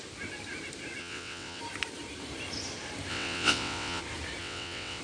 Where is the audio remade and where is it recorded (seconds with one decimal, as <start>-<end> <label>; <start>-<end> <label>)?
0.0-1.0 recorded; 1.0-1.6 remade; 1.6-3.1 recorded; 3.1-4.0 remade; 4.0-4.4 recorded; 4.4-5.0 remade